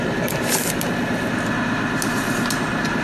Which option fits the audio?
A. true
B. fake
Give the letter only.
A